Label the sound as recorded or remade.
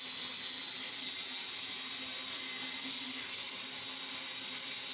recorded